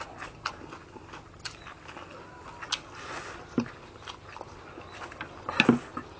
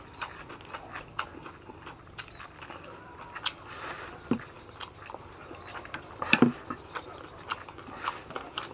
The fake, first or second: second